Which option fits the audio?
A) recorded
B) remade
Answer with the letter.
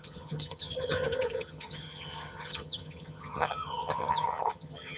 B